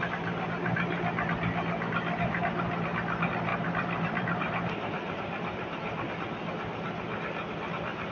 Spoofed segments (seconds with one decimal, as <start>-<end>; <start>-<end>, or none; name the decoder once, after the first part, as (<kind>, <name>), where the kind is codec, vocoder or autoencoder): 3.5-6.1 (vocoder, BigVGAN v2)